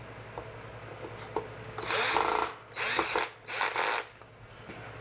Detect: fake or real real